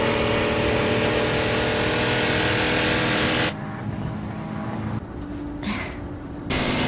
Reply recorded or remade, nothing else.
recorded